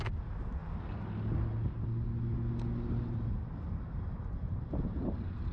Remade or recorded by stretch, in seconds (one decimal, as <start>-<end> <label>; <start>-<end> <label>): 0.0-5.5 recorded